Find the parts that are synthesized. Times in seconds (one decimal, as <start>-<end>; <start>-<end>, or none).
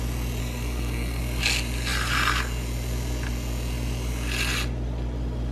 0.4-1.2